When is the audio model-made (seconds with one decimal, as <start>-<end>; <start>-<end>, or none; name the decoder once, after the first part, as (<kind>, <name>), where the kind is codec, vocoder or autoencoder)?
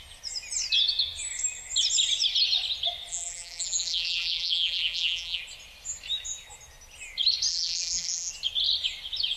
3.1-5.4 (vocoder, BigVGAN v2); 7.5-8.3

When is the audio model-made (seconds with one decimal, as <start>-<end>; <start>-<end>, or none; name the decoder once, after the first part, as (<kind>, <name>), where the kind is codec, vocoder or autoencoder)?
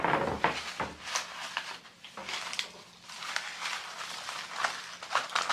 none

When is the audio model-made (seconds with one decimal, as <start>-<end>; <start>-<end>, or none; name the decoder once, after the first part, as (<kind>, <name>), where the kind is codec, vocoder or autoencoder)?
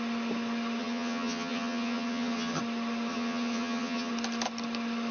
0.8-2.6 (vocoder, HiFi-GAN); 3.1-4.1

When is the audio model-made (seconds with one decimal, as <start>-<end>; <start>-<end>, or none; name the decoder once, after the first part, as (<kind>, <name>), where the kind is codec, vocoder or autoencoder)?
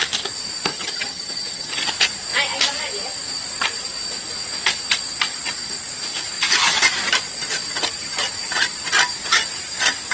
0.7-1.7 (vocoder, HiFi-GAN)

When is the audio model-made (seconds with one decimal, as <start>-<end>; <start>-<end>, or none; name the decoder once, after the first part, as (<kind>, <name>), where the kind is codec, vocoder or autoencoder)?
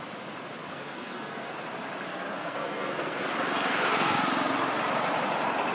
0.6-1.6 (codec, SNAC); 2.1-3.2; 3.7-4.2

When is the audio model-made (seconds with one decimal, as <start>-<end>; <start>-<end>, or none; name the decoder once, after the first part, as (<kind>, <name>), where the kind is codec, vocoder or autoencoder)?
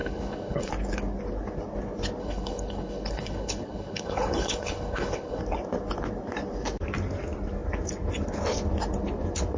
0.0-0.7 (codec, HILCodec); 2.2-5.4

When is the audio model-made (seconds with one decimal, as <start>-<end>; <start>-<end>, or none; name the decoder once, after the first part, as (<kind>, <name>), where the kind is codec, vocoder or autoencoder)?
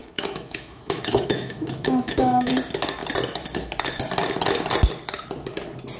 0.0-2.5 (autoencoder, DAC-VAE)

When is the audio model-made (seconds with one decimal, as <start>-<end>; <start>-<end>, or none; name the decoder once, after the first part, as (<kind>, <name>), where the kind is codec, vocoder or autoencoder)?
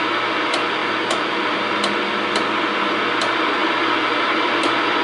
none